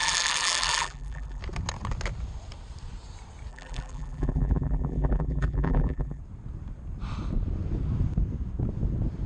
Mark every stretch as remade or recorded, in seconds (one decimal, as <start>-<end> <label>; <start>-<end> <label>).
0.0-1.4 remade; 1.4-3.5 recorded; 3.5-6.2 remade; 6.2-9.3 recorded